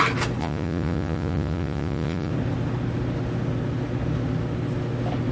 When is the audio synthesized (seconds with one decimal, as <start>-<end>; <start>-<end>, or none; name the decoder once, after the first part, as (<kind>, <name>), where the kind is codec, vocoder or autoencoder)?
0.4-2.3 (vocoder, Vocos)